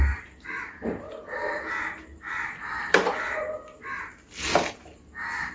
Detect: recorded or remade recorded